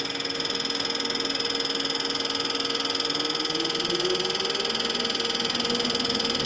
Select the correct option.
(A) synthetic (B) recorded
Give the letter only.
B